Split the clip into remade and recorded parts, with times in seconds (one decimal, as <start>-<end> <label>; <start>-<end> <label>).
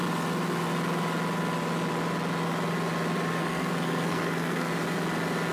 0.0-3.4 recorded; 3.4-4.7 remade; 4.7-5.5 recorded